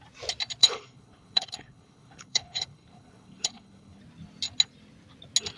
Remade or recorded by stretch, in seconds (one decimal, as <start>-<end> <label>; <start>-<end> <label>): 0.0-0.6 recorded; 0.6-4.0 remade; 4.0-5.6 recorded